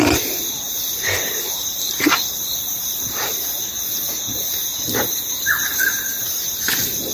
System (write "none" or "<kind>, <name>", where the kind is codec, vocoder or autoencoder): vocoder, BigVGAN v2